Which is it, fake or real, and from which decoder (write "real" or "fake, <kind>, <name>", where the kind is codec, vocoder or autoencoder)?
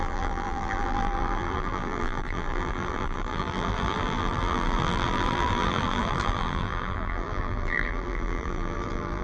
fake, vocoder, BigVGAN v2